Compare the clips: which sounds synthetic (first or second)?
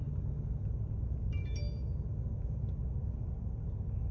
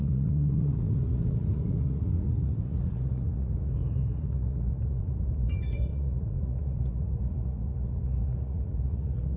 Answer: second